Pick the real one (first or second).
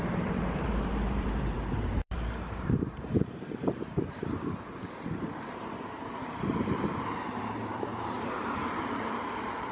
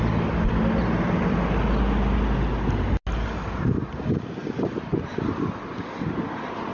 second